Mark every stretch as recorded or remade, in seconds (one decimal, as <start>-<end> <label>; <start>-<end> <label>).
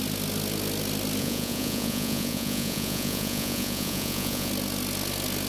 0.0-1.2 recorded; 1.2-4.5 remade; 4.5-5.5 recorded